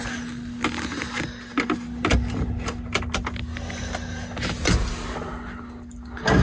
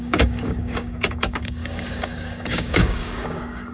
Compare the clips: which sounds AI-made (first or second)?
second